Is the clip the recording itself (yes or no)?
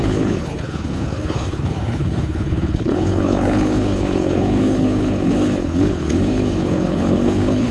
no